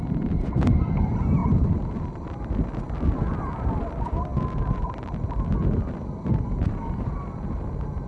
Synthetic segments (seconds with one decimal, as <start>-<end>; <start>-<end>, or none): none